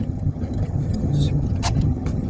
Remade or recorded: remade